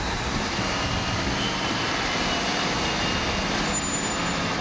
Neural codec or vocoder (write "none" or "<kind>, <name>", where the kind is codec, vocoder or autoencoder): none